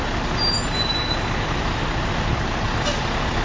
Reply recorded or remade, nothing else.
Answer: recorded